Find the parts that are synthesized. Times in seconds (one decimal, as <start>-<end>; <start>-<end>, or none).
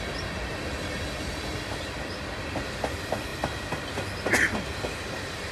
none